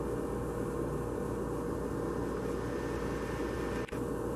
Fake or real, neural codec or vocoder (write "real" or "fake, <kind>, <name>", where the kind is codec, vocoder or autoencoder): real